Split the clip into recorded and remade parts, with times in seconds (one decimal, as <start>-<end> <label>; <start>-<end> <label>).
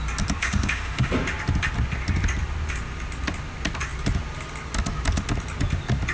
0.0-0.4 recorded; 0.4-1.1 remade; 1.1-6.1 recorded